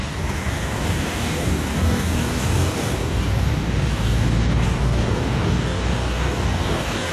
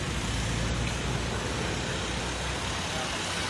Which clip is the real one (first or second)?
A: second